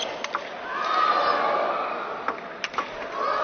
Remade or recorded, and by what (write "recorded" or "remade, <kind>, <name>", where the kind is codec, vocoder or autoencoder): recorded